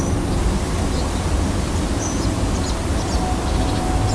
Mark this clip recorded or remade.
recorded